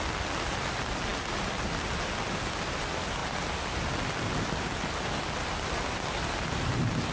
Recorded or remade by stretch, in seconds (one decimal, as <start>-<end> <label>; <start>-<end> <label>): 0.0-7.1 recorded